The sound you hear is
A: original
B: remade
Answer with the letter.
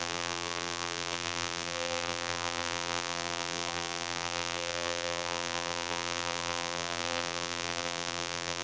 B